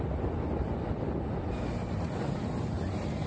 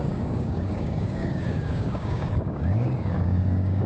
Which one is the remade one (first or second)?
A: second